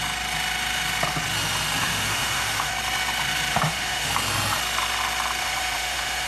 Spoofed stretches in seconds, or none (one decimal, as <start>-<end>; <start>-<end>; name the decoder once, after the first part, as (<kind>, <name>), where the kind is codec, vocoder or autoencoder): 1.8-2.7 (autoencoder, DAC-VAE); 3.5-4.1; 5.4-6.3